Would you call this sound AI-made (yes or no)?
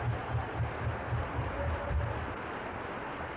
no